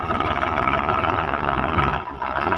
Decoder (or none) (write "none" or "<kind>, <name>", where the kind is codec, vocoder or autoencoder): vocoder, Vocos